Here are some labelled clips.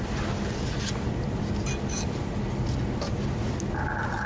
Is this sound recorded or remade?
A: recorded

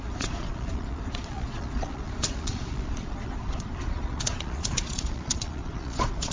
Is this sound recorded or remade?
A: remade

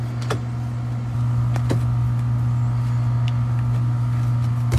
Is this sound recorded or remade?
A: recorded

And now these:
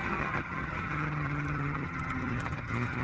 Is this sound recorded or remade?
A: remade